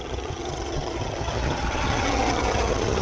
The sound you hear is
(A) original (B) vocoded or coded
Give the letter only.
B